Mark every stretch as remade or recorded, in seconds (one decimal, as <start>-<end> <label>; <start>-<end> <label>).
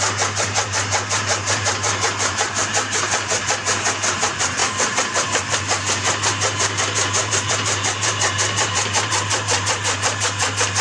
0.0-10.8 remade